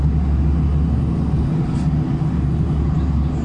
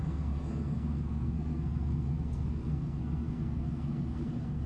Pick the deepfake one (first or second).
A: second